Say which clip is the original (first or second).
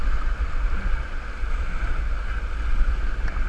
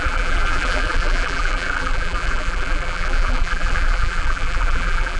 first